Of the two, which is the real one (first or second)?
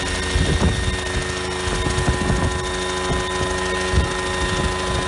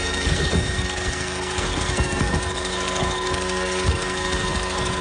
first